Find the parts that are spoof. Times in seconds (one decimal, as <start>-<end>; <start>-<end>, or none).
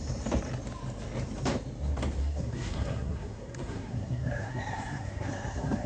2.2-5.9